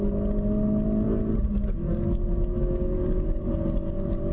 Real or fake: real